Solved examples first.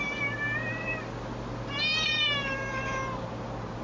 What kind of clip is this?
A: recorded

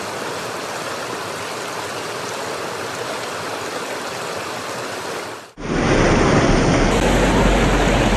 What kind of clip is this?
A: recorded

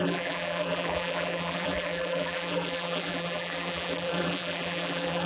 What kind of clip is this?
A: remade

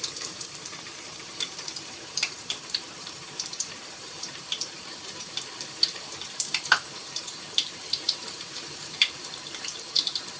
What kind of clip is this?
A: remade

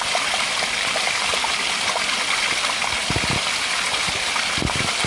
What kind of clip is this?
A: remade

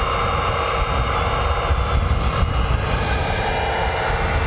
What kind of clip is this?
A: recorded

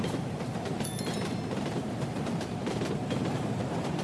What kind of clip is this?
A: remade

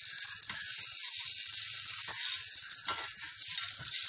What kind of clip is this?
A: recorded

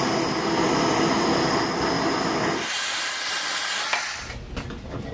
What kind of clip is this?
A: recorded